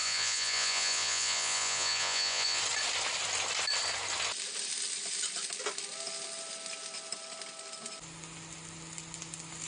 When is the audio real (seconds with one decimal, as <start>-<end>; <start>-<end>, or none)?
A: 2.6-9.7